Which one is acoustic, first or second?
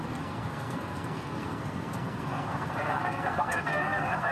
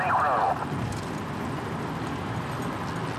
second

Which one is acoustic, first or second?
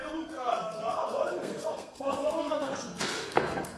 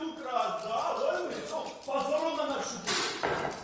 second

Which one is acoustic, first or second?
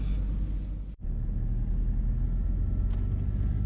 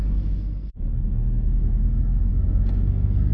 first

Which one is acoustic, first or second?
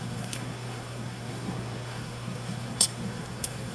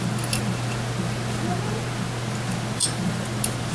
second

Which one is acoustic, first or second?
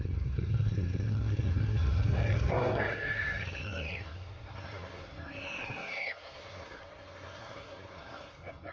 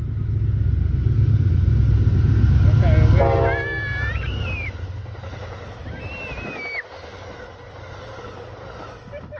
second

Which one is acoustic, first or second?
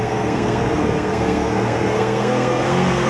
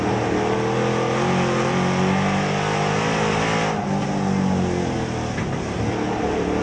second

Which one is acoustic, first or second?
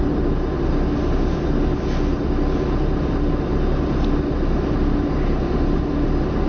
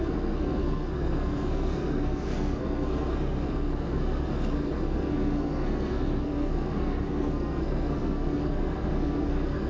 first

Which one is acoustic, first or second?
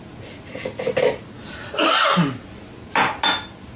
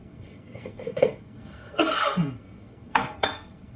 first